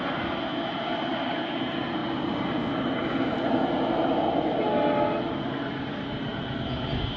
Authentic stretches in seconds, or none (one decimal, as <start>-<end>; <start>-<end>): 0.0-7.2